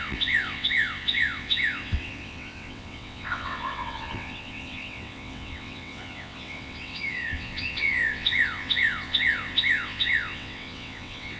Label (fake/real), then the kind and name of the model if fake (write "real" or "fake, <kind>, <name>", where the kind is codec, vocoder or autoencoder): fake, vocoder, WaveNeXt